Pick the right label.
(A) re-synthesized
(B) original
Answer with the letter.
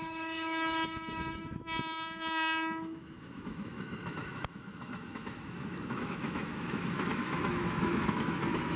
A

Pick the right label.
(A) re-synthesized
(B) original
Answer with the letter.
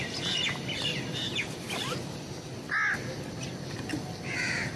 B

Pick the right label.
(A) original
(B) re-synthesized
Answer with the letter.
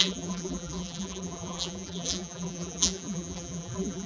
B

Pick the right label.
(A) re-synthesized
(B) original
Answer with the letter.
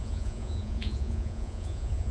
A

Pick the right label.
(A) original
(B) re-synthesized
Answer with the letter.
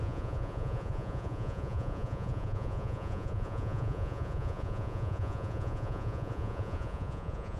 B